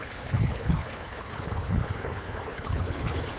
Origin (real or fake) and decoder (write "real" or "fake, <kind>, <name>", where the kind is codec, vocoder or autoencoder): fake, codec, HILCodec